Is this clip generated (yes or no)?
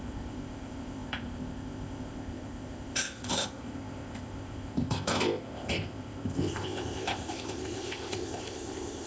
yes